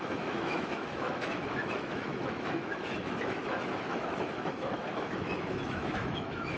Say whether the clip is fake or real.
fake